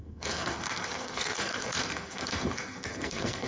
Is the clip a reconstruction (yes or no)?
yes